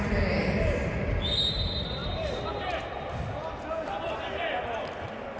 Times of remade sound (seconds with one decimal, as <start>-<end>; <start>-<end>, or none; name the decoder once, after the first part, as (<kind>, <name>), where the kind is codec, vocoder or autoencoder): none